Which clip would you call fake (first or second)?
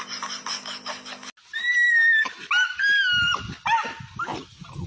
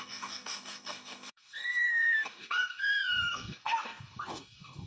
second